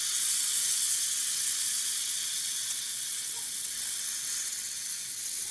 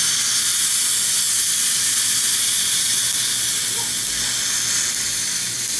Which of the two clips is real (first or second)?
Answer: second